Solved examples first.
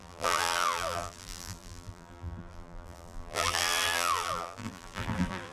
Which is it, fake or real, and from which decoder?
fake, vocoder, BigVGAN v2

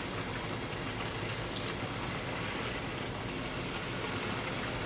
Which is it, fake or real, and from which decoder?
real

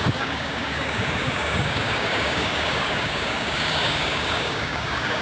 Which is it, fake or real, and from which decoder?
fake, codec, DAC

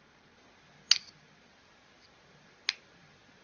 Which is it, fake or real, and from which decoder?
real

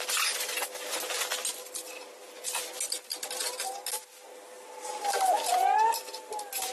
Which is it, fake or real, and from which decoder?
real